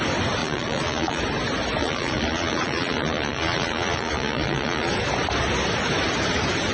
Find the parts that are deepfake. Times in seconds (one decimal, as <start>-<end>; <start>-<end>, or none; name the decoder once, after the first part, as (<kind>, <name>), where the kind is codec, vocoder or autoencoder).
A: 0.4-1.2 (vocoder, Vocos); 1.8-4.9